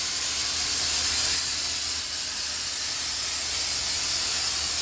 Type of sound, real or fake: real